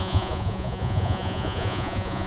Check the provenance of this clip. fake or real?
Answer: fake